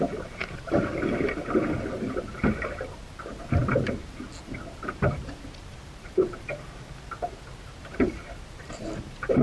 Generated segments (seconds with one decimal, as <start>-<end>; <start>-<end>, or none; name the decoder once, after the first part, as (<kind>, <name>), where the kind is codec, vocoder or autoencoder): 0.0-0.4 (vocoder, BigVGAN v2); 2.0-3.6; 4.4-6.5; 7.8-9.4